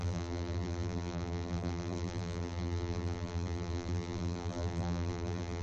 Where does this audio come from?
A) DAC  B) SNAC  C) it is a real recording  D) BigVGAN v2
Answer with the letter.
D